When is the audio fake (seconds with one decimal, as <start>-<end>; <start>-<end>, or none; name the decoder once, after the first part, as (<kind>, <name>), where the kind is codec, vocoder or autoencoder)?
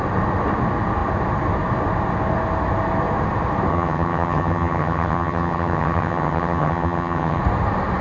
3.7-7.4 (vocoder, HiFi-GAN)